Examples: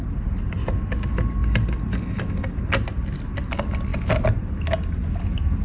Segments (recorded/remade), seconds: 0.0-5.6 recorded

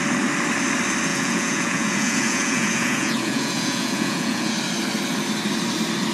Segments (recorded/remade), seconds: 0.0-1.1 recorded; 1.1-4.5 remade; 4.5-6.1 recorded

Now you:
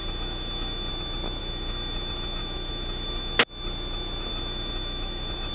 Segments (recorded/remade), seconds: 0.0-0.9 remade; 0.9-1.4 recorded; 1.4-3.3 remade; 3.3-4.3 recorded; 4.3-5.5 remade

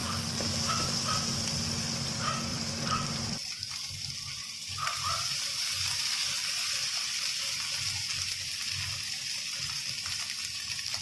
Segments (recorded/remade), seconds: 0.0-2.5 recorded; 2.5-7.4 remade; 7.4-11.0 recorded